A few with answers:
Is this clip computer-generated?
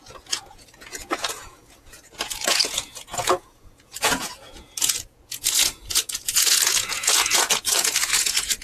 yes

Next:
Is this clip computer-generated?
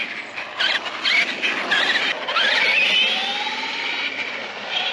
no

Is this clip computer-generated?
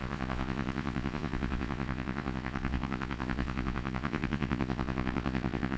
yes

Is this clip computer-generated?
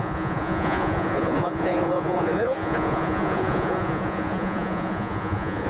yes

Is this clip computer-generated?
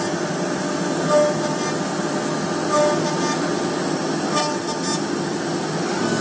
no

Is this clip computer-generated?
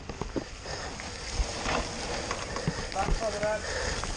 no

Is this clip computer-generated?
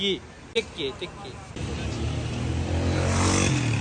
no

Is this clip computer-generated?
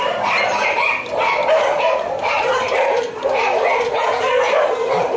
no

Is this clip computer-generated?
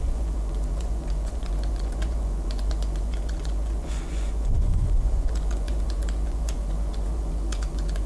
yes